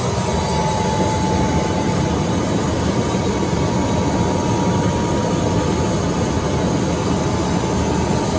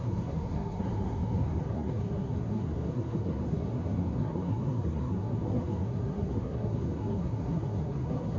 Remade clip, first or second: second